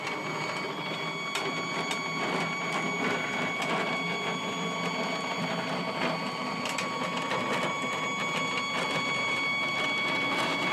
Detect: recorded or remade remade